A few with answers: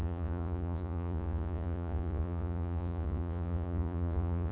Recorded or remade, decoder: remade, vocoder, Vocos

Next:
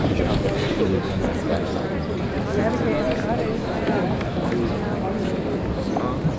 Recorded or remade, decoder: recorded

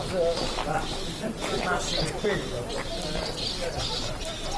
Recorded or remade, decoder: remade, vocoder, BigVGAN v2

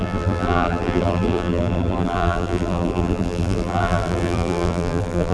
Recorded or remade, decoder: remade, vocoder, BigVGAN v2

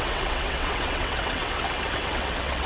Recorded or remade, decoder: remade, vocoder, WaveNeXt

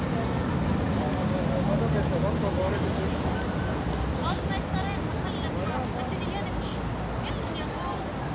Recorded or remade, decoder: recorded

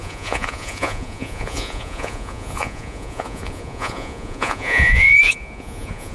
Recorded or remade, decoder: remade, vocoder, Vocos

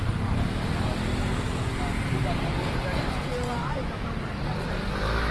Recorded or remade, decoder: recorded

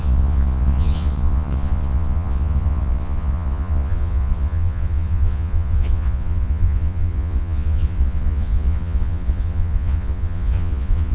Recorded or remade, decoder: remade, vocoder, Vocos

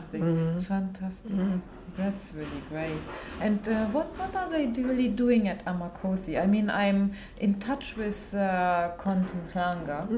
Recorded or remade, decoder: recorded